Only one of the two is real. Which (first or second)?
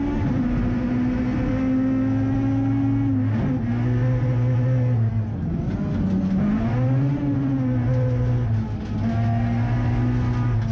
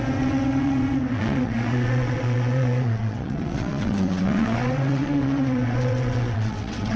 first